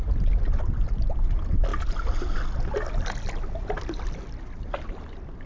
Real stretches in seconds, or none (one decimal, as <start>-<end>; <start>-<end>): 0.0-5.5